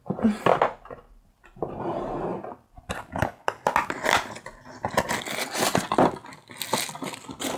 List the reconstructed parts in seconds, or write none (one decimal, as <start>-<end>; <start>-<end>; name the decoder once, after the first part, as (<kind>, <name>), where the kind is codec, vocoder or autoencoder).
none